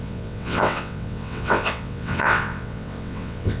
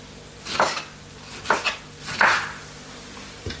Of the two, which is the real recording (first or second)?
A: second